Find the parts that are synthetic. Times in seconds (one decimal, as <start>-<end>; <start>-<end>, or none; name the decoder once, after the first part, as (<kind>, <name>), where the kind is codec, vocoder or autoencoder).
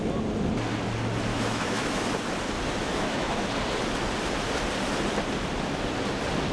1.3-2.1 (autoencoder, DAC-VAE); 2.8-3.5